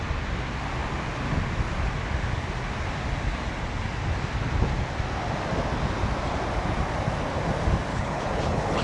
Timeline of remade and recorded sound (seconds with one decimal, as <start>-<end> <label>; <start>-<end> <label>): 0.0-7.9 recorded; 7.9-8.8 remade